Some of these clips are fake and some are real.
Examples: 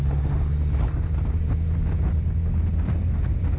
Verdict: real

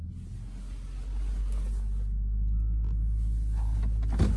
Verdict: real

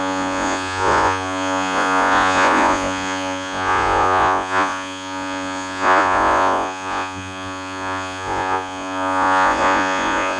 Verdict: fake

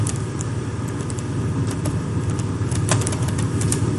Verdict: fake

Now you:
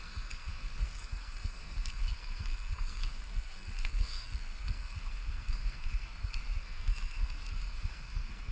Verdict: fake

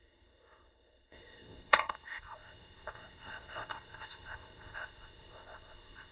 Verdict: fake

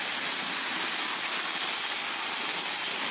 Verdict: real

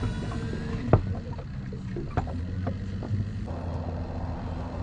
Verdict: real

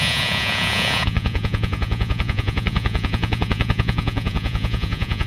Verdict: fake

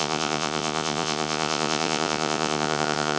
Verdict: fake